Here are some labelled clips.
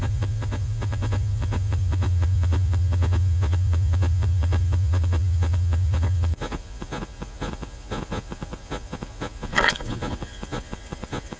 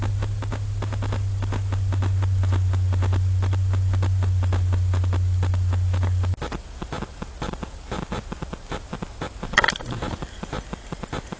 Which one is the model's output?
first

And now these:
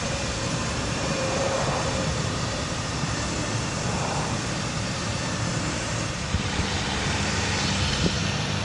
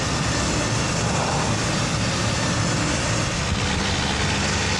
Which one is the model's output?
first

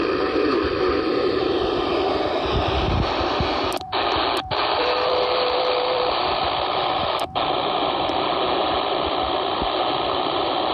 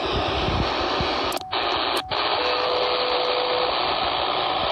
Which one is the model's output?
first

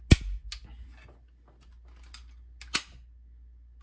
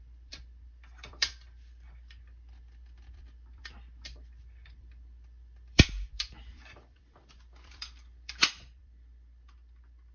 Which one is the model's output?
second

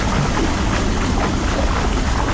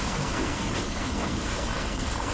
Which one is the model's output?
second